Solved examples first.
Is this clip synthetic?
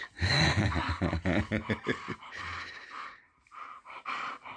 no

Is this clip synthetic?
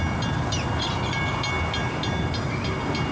no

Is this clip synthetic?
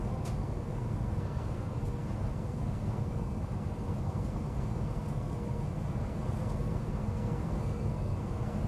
yes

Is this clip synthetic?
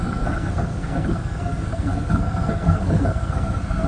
yes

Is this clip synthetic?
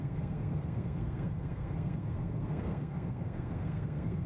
yes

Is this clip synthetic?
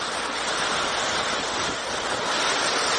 no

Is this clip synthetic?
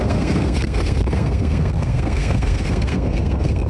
yes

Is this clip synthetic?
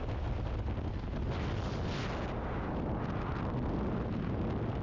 no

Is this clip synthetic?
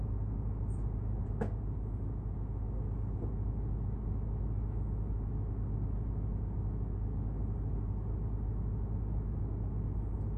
no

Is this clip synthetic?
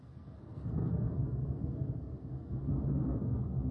yes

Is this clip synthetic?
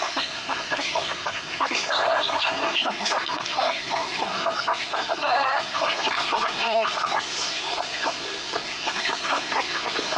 yes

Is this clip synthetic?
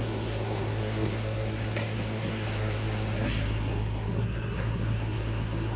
yes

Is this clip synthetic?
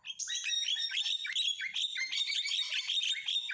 no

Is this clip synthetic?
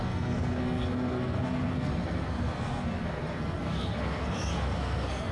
yes